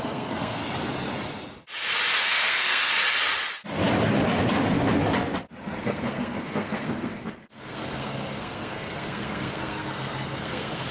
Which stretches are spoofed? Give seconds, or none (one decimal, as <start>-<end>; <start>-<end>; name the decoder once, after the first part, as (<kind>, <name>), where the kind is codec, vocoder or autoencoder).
0.0-0.6 (codec, SNAC); 2.2-2.9; 5.8-10.9